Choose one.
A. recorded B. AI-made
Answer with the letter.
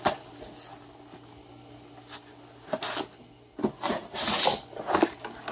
A